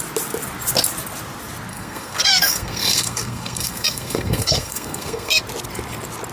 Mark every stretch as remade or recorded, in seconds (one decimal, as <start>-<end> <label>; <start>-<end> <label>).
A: 0.0-1.7 recorded; 1.7-5.4 remade; 5.4-6.3 recorded